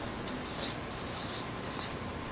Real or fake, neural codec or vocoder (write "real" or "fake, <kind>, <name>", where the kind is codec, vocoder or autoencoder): real